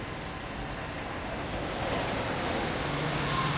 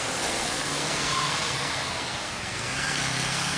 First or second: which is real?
first